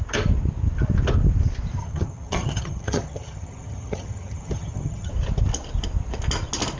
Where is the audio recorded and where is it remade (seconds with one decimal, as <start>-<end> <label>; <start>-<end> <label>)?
0.0-1.8 recorded; 1.8-5.1 remade; 5.1-6.8 recorded